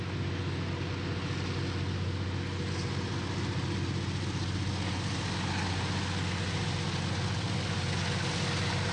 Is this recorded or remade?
recorded